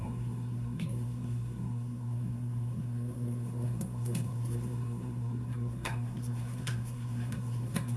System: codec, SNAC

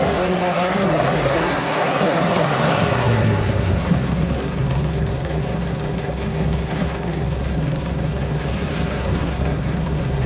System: codec, SNAC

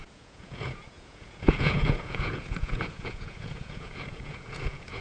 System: vocoder, Vocos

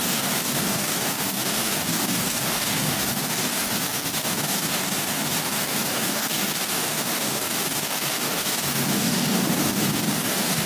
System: codec, DAC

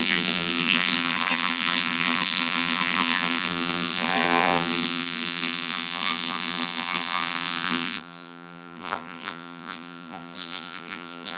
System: vocoder, BigVGAN v2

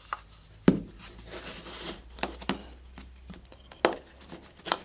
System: none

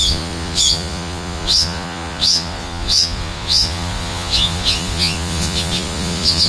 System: vocoder, Vocos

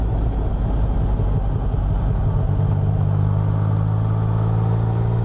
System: none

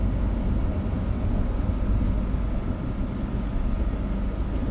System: none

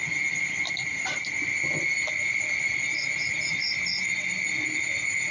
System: none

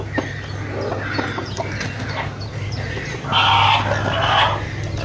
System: none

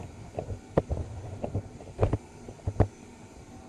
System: none